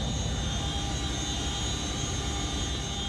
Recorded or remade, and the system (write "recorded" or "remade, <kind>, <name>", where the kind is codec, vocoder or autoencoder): recorded